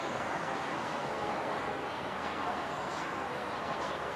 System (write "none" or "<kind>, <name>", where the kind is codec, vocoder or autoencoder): codec, SNAC